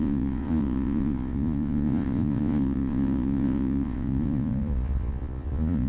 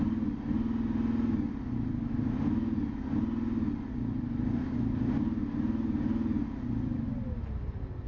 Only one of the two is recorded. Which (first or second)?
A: second